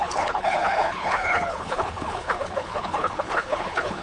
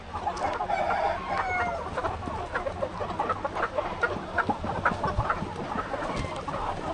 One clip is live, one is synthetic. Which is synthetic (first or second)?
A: first